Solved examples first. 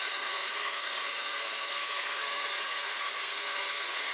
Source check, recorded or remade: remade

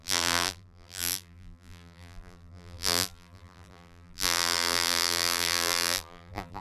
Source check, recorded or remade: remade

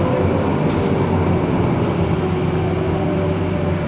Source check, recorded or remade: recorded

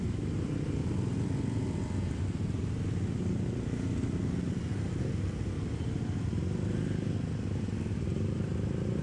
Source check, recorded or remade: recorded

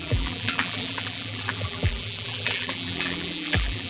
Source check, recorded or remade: remade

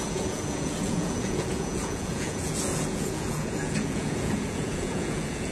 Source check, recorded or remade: remade